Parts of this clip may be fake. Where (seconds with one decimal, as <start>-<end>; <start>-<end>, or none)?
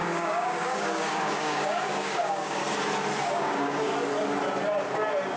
0.0-2.6; 3.2-3.9